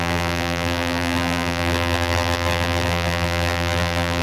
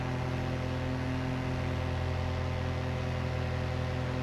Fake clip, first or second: first